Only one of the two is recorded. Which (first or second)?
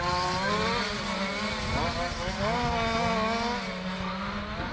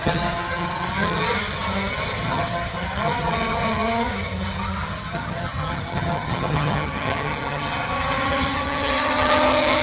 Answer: first